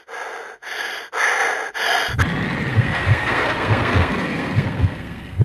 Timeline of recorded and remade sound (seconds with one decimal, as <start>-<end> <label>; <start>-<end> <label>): 0.0-2.7 recorded; 2.7-5.4 remade